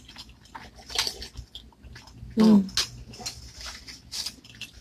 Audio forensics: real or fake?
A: real